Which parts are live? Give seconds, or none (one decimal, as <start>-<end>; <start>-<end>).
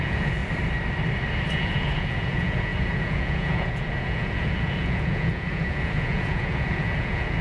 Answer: 0.4-1.5